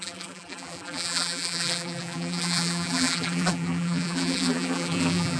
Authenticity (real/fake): fake